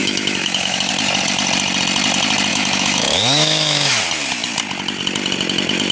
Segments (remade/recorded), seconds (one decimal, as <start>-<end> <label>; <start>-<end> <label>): 0.0-0.9 remade; 0.9-2.5 recorded; 2.5-4.0 remade; 4.0-5.9 recorded